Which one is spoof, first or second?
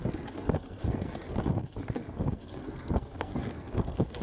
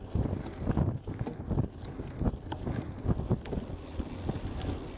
first